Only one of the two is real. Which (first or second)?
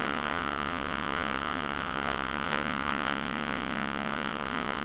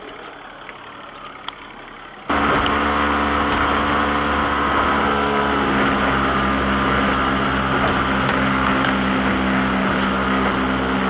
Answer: second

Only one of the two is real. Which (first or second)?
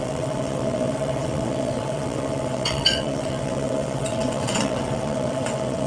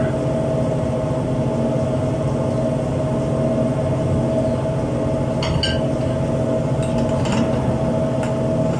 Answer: second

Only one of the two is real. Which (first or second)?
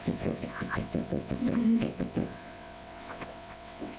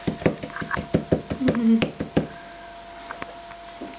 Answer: second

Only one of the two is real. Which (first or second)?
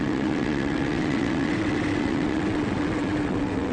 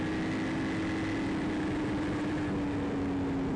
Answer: second